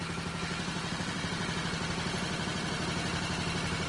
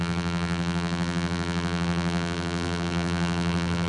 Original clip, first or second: first